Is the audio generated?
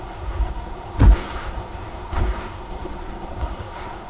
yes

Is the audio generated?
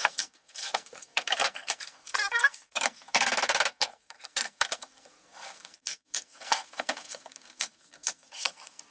yes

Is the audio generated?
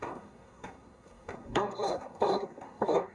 yes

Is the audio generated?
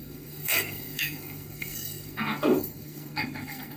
yes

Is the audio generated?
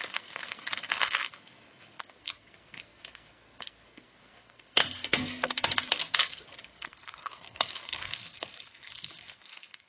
yes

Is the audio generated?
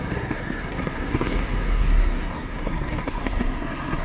yes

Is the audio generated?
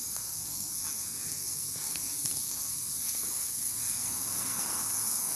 yes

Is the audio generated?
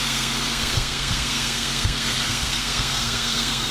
yes